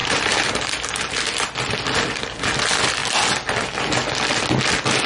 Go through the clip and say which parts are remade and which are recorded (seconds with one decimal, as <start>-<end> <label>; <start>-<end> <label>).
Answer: 0.0-1.1 remade; 1.1-5.1 recorded